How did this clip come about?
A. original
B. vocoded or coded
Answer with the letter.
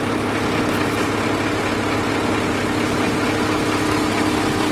A